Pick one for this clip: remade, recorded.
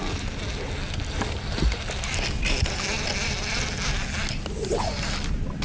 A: recorded